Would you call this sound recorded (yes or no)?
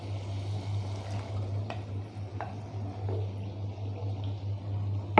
yes